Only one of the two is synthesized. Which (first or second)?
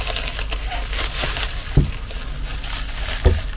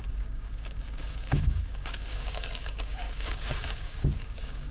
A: second